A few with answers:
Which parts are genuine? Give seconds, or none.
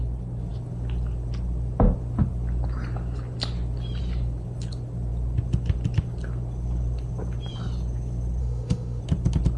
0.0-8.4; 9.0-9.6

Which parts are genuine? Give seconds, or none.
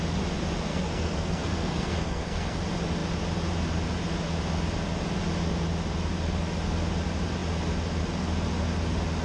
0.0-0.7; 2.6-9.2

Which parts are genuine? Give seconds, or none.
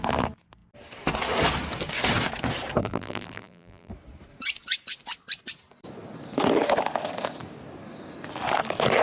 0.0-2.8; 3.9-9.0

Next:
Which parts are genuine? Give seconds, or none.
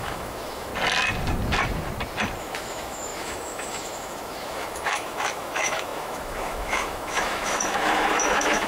0.7-2.4